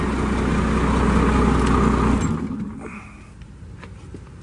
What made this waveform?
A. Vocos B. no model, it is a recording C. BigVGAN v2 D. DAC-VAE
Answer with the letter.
B